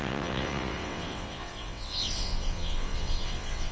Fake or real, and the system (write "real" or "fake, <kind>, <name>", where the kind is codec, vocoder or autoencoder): fake, vocoder, WaveNeXt